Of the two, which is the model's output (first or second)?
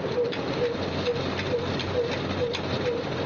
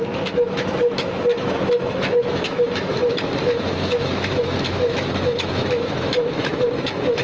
second